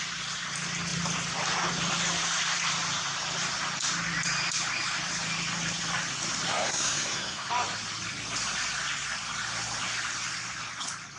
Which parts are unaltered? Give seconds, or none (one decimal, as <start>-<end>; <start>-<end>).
0.0-6.5; 7.5-11.2